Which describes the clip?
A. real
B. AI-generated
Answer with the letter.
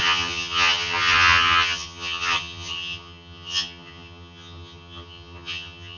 B